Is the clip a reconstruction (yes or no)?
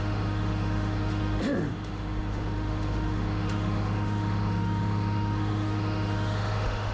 yes